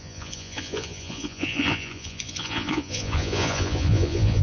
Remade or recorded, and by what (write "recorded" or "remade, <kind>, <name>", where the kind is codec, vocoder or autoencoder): remade, vocoder, Vocos